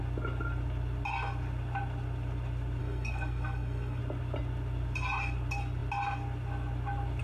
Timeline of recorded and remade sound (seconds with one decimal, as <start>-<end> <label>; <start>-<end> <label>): 0.0-2.8 recorded; 2.8-4.0 remade; 4.0-7.2 recorded